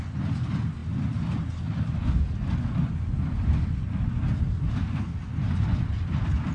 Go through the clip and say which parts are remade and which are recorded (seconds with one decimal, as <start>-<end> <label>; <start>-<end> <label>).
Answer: 0.0-6.5 recorded